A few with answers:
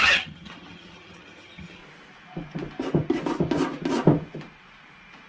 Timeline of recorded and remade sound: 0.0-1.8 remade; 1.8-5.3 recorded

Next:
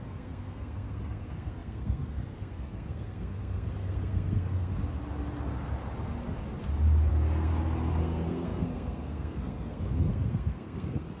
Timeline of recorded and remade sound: 0.0-4.7 remade; 4.7-7.1 recorded; 7.1-7.5 remade; 7.5-8.0 recorded; 8.0-11.2 remade

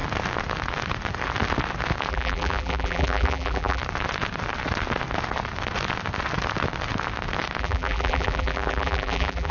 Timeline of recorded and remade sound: 0.0-2.1 recorded; 2.1-3.8 remade; 3.8-7.6 recorded; 7.6-9.5 remade

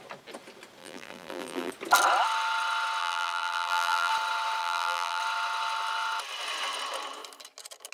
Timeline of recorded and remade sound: 0.0-0.8 recorded; 0.8-1.7 remade; 1.7-3.0 recorded; 3.0-4.1 remade; 4.1-4.6 recorded; 4.6-5.2 remade; 5.2-7.9 recorded

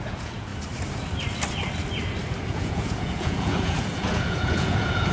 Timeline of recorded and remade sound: 0.0-0.5 remade; 0.5-2.4 recorded; 2.4-5.1 remade

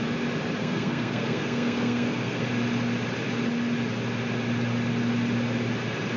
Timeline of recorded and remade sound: 0.0-0.6 recorded; 0.6-2.5 remade; 2.5-6.2 recorded